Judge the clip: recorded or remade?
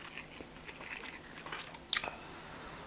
recorded